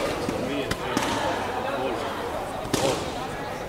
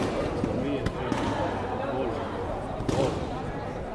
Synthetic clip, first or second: first